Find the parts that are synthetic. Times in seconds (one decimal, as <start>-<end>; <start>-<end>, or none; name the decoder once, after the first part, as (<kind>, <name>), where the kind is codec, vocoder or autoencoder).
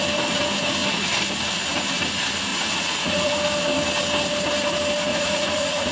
2.5-3.3 (vocoder, Vocos); 5.1-5.9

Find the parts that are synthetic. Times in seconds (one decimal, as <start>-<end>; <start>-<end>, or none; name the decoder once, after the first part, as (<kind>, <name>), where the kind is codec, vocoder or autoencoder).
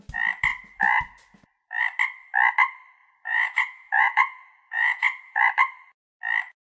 3.0-5.4 (vocoder, Vocos)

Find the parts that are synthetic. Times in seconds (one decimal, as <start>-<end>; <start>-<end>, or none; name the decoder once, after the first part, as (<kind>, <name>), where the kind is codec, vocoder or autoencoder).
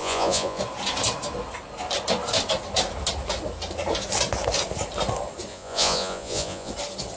0.0-0.6 (vocoder, Vocos); 5.5-6.7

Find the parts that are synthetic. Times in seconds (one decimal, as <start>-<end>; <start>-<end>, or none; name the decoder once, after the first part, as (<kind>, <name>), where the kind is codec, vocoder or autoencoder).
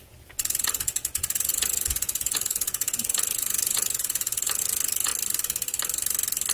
0.0-5.1 (vocoder, Vocos)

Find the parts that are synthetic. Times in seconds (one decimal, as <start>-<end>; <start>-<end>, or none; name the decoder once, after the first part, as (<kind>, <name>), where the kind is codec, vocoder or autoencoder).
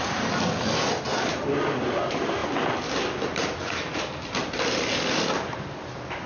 none